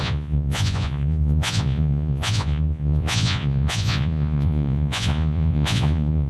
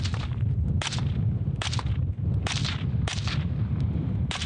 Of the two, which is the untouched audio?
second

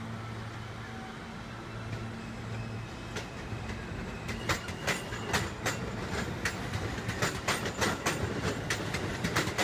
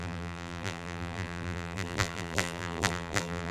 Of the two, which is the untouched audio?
first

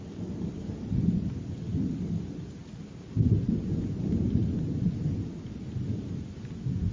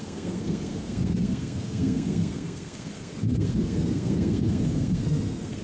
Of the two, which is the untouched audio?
first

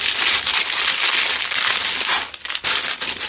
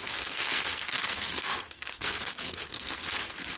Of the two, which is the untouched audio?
first